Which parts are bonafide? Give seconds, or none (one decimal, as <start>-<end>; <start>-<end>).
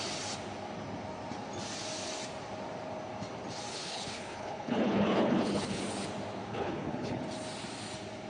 0.0-3.7; 5.8-6.5; 7.2-8.3